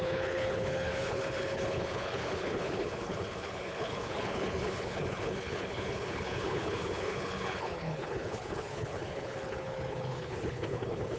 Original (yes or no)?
no